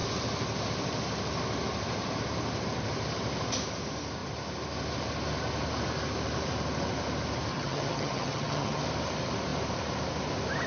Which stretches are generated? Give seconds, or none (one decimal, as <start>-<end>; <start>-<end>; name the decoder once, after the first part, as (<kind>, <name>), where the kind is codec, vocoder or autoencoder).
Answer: 7.5-8.8 (vocoder, HiFi-GAN)